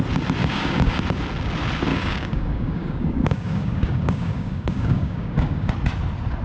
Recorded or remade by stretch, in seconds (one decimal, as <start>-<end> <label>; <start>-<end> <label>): 0.0-0.4 recorded; 0.4-1.0 remade; 1.0-1.9 recorded; 1.9-5.7 remade; 5.7-6.4 recorded